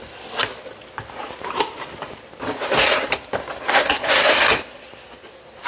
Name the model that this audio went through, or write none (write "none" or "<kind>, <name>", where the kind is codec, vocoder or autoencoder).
none